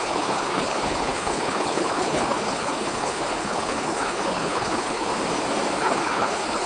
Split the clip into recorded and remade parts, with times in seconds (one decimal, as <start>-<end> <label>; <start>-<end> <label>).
0.0-5.1 remade; 5.1-5.8 recorded; 5.8-6.7 remade